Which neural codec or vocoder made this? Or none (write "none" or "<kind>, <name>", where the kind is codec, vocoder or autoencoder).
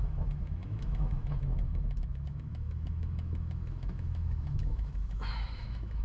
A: autoencoder, DAC-VAE